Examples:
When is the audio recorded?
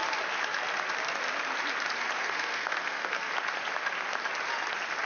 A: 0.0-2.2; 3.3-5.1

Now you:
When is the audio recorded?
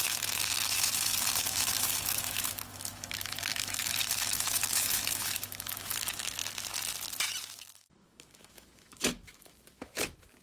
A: 6.4-7.4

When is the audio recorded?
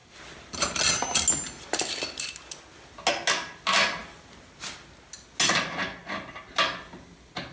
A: 0.0-7.5